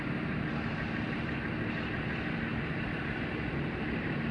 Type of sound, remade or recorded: recorded